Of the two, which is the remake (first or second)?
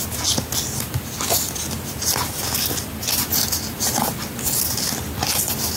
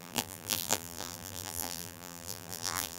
second